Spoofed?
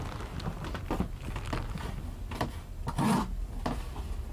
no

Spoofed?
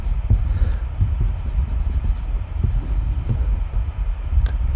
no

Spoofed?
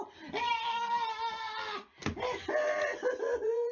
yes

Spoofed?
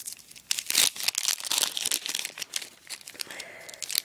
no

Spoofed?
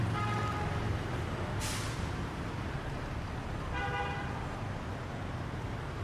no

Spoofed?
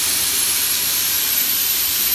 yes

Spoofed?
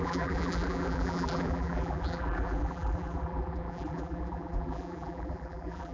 yes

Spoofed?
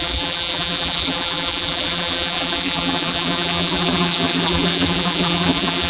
yes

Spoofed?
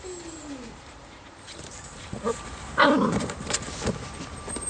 yes